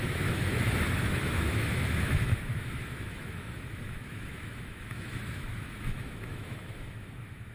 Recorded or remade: remade